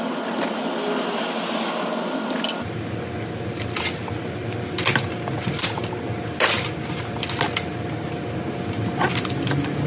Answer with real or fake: real